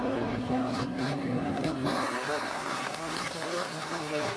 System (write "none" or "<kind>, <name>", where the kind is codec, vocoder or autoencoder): codec, SNAC